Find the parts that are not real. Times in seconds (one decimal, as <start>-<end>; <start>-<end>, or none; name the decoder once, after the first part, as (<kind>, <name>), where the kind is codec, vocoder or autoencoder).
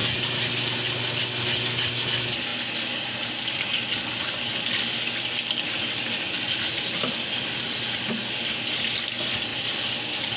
none